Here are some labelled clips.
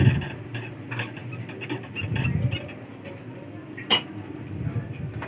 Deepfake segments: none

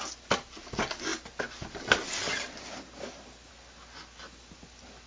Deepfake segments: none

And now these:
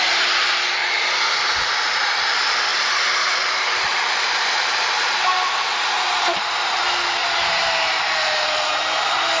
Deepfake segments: 0.8-1.7 (vocoder, BigVGAN v2); 2.7-6.5; 7.2-8.7

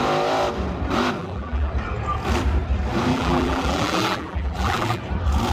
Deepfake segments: 1.2-1.7 (vocoder, BigVGAN v2); 3.1-5.0